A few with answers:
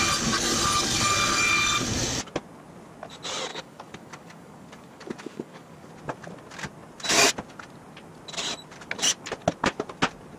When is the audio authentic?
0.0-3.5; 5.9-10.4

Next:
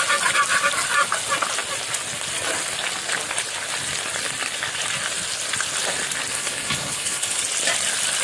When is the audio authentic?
0.0-6.3; 7.4-8.2

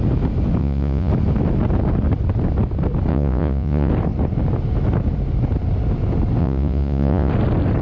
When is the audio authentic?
0.0-0.6; 1.1-3.1; 3.9-6.4; 7.3-7.8